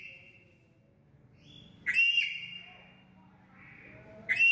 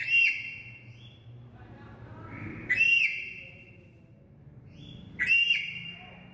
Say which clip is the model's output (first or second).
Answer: second